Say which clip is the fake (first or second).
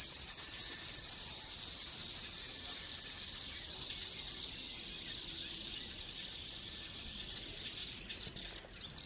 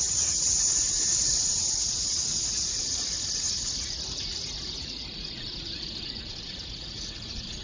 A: second